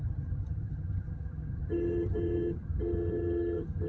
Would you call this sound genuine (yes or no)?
no